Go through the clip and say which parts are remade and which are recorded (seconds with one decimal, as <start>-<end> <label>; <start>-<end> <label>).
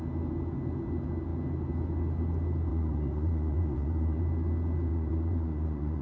0.0-2.7 recorded; 2.7-4.2 remade; 4.2-4.9 recorded; 4.9-6.0 remade